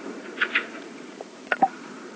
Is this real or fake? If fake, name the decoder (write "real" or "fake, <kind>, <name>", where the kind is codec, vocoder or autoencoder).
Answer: fake, vocoder, Vocos